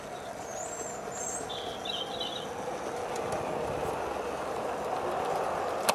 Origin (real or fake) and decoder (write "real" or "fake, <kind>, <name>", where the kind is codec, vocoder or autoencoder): real